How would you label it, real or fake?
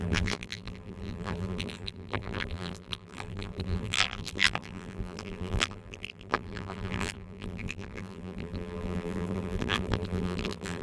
fake